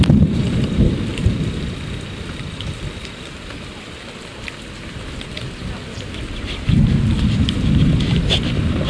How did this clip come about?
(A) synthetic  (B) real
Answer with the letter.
B